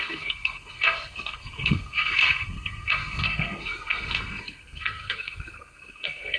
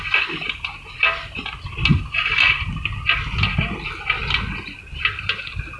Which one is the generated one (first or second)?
first